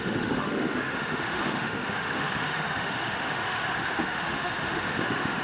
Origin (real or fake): fake